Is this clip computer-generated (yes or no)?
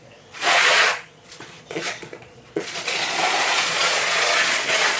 yes